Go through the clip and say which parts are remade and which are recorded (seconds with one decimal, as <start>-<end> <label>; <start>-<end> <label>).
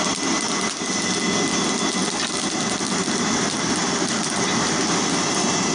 0.0-5.7 recorded